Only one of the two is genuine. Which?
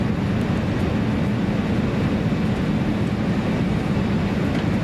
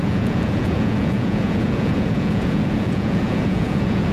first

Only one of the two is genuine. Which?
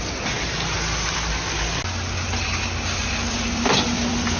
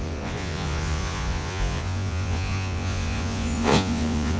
first